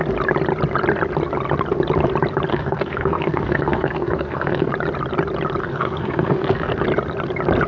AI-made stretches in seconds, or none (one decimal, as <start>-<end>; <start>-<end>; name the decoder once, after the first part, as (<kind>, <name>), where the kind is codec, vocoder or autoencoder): 2.5-4.7 (codec, SNAC); 5.6-6.7